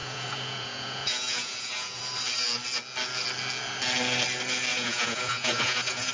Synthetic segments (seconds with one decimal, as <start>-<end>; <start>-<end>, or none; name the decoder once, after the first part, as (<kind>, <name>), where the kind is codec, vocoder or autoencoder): 0.0-2.0 (vocoder, Vocos); 4.7-6.1